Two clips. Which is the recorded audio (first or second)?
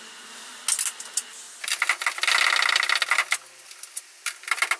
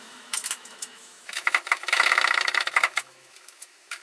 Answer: first